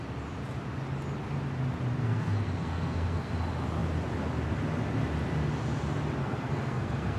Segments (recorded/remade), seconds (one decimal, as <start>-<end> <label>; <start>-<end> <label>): 0.0-2.0 recorded; 2.0-3.3 remade; 3.3-6.2 recorded; 6.2-7.2 remade